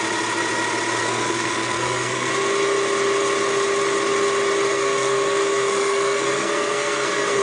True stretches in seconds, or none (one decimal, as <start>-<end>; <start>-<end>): 0.0-1.0; 2.3-4.7